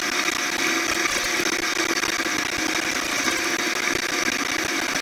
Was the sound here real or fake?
real